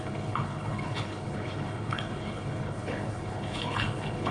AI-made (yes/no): yes